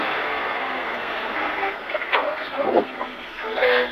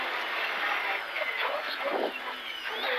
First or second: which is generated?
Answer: first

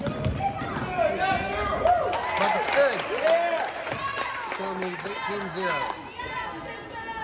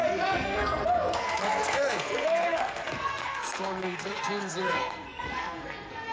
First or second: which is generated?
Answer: second